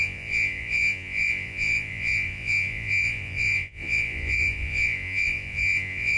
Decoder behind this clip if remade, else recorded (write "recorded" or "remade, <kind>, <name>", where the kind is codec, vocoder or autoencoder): remade, vocoder, Vocos